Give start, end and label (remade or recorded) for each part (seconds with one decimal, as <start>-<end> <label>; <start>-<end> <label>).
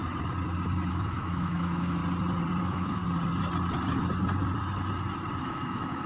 0.0-0.9 recorded; 0.9-2.0 remade; 2.0-2.6 recorded; 2.6-3.0 remade; 3.0-5.4 recorded; 5.4-6.1 remade